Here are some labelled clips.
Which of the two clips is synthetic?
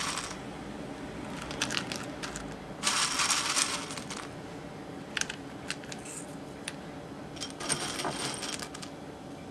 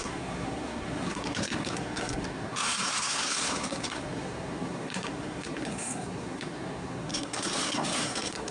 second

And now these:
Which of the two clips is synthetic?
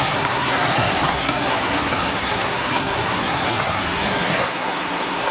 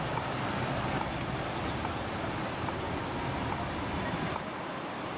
first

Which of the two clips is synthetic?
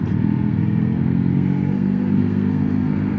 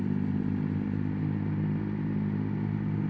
first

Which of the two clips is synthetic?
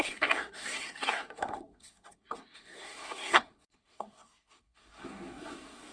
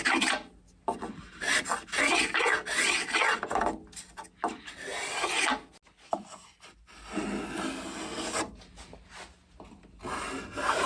first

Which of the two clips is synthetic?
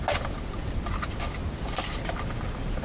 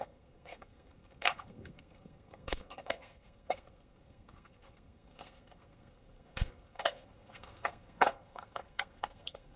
second